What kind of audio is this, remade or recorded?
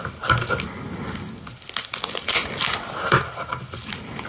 recorded